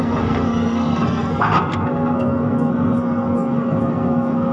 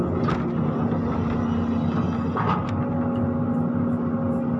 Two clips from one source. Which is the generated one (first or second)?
first